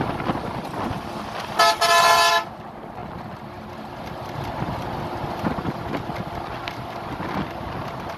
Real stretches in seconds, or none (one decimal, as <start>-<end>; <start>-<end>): 0.0-8.2